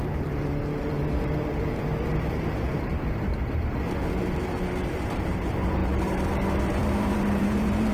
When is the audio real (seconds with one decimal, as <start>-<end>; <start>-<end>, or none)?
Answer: 3.3-4.4